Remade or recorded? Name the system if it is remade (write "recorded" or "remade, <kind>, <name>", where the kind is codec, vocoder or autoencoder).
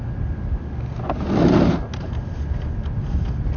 recorded